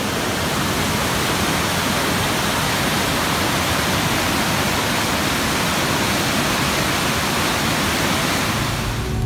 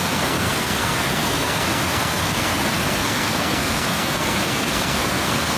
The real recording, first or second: first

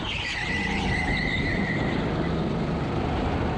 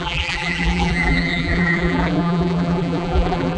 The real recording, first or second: first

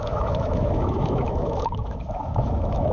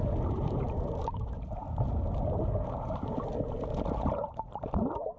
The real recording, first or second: second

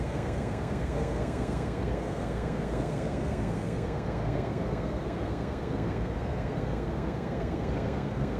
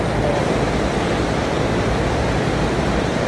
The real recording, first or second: second